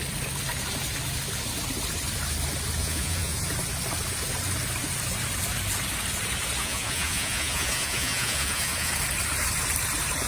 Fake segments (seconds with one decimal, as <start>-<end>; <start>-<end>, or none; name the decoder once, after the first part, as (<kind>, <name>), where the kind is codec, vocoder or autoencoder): 2.8-3.4 (vocoder, Vocos); 6.6-8.9